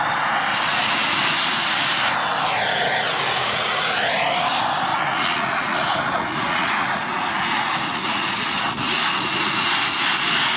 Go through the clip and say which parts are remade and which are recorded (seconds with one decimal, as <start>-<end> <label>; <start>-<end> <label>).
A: 0.0-0.7 recorded; 0.7-1.2 remade; 1.2-3.4 recorded; 3.4-4.0 remade; 4.0-4.9 recorded; 4.9-9.7 remade; 9.7-10.6 recorded